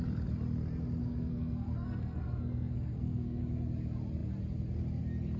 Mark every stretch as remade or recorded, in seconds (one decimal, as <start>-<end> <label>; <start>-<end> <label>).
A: 0.0-1.0 recorded; 1.0-3.4 remade; 3.4-5.4 recorded